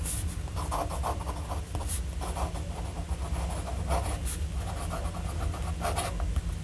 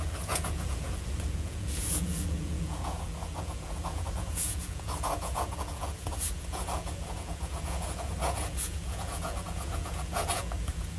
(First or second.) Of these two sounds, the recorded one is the first